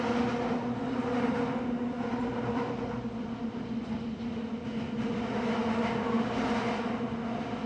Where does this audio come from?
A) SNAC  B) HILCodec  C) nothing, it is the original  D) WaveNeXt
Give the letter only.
C